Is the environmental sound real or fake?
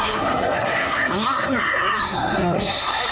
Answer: fake